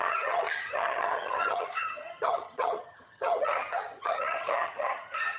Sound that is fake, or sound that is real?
fake